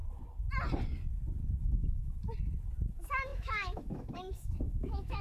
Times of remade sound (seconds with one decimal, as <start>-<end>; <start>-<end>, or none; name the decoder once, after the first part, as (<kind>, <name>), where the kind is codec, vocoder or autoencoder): 1.6-2.2 (autoencoder, DAC-VAE); 2.9-5.2